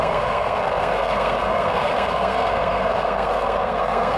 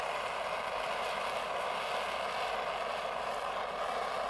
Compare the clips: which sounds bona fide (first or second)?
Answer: second